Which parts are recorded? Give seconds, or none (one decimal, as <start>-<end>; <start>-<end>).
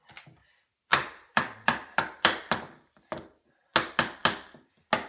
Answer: 0.0-0.9; 3.5-5.1